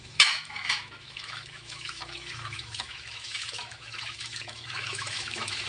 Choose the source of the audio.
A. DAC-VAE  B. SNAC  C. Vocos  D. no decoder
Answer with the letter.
A